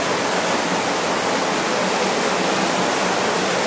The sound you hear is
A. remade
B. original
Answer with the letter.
B